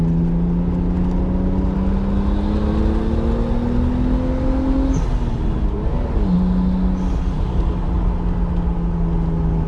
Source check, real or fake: real